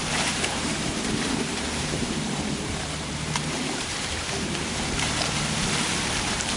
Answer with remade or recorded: remade